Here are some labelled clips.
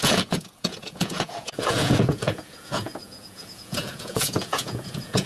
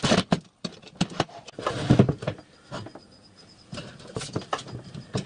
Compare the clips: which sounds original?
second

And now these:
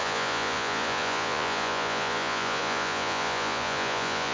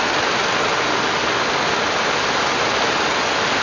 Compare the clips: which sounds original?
second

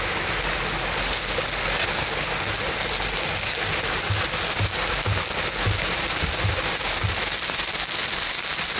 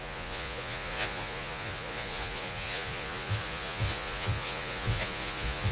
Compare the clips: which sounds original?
first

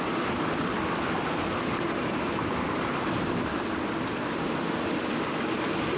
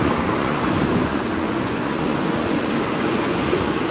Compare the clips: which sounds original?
first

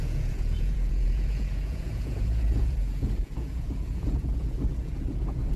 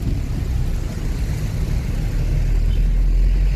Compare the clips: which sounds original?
second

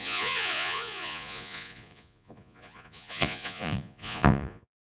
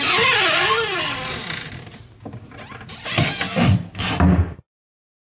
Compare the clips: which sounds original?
second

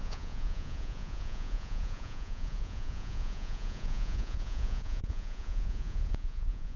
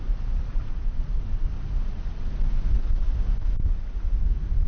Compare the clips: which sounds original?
second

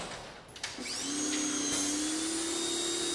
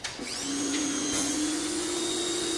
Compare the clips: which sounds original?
first